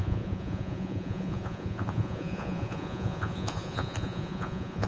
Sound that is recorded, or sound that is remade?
remade